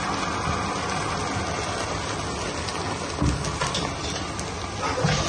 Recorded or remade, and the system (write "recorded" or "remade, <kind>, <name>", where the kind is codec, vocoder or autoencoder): recorded